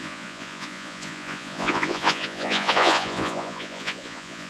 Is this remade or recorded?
remade